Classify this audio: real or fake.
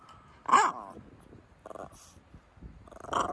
real